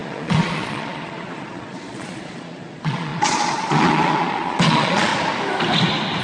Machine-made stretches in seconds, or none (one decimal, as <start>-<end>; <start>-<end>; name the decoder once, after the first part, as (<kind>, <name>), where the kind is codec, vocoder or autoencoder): 0.0-5.1 (vocoder, Vocos)

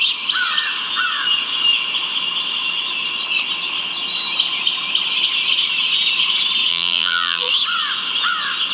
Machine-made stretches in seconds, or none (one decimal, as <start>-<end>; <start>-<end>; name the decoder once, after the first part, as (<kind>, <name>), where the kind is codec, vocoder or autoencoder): 6.7-7.5 (vocoder, BigVGAN v2)

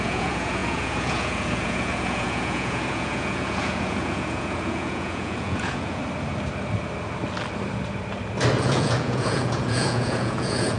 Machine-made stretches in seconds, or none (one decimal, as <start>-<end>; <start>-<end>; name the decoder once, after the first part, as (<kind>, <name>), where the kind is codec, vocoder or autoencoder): 0.0-6.0 (vocoder, Vocos); 8.6-10.8

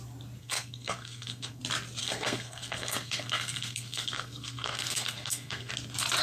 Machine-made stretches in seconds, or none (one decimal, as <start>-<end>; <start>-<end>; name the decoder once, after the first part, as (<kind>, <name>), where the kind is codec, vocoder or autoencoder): 0.4-1.6 (codec, SNAC); 2.0-5.7

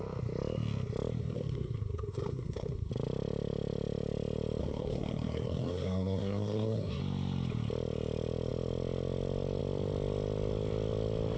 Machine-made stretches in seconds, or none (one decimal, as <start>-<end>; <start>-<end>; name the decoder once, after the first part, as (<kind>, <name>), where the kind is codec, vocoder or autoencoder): 1.2-2.9 (codec, SNAC); 4.6-7.0